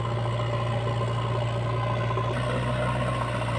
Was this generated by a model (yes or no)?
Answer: no